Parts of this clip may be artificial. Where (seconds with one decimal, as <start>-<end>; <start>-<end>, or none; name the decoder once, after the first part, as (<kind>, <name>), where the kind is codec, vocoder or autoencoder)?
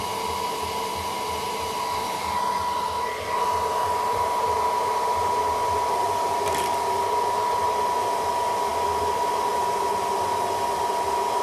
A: none